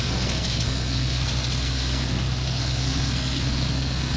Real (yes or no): no